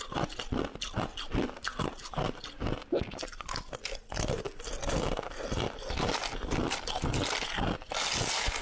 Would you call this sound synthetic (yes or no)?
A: no